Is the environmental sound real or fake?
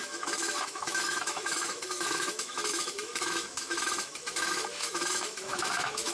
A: fake